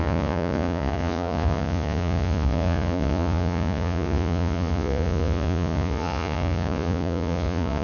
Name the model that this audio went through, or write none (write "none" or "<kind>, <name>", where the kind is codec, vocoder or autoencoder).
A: vocoder, Vocos